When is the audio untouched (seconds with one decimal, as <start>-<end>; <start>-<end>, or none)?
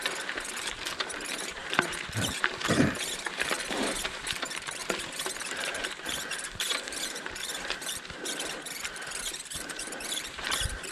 none